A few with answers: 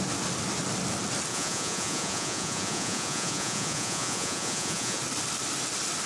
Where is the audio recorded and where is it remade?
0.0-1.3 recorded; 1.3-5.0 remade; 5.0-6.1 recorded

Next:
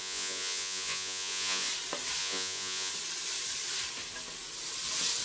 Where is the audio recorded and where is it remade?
0.0-1.7 remade; 1.7-2.2 recorded; 2.2-2.9 remade; 2.9-5.2 recorded

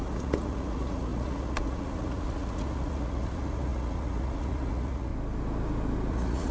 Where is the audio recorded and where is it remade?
0.0-5.1 remade; 5.1-6.1 recorded; 6.1-6.5 remade

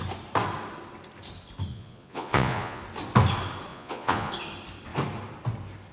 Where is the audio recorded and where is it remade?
0.0-1.7 recorded; 1.7-2.8 remade; 2.8-3.7 recorded; 3.7-4.3 remade; 4.3-5.9 recorded

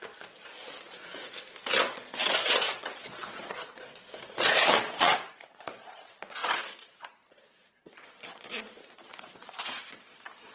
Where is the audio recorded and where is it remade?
0.0-1.2 remade; 1.2-1.8 recorded; 1.8-10.5 remade

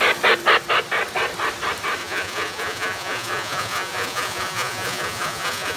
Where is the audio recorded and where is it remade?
0.0-2.0 recorded; 2.0-5.8 remade

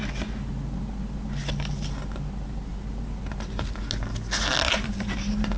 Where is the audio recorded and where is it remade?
0.0-5.6 recorded